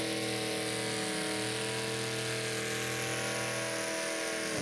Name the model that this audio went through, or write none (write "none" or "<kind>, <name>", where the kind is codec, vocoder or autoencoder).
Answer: none